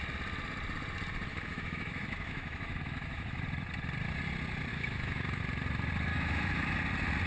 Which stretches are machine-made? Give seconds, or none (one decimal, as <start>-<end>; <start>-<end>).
1.3-3.4; 4.7-5.4; 6.1-6.8